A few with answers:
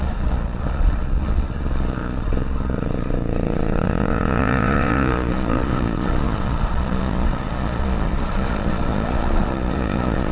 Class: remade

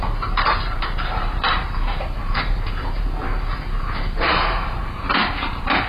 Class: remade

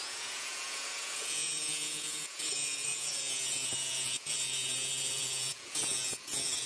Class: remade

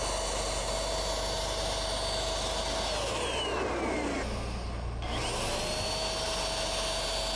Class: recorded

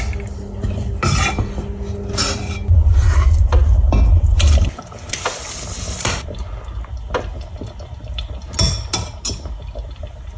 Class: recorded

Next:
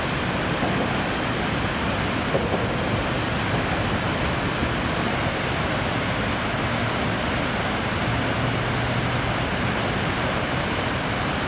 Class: recorded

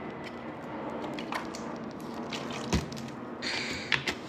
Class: recorded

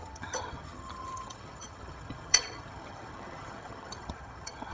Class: remade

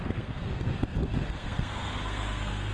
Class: remade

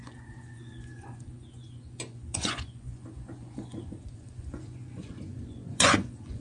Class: remade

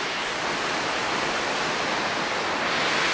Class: recorded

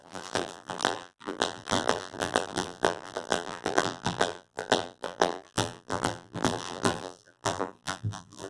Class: remade